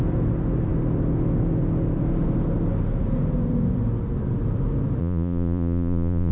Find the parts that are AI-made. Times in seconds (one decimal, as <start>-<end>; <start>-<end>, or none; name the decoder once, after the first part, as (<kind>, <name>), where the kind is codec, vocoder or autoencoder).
5.0-6.3 (vocoder, Vocos)